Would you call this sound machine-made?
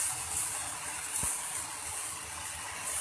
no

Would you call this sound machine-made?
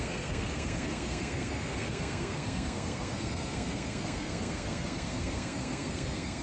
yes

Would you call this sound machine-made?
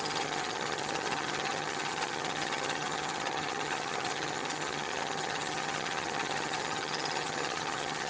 yes